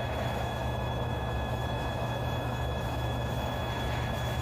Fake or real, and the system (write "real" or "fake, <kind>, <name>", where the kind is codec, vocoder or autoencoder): fake, autoencoder, DAC-VAE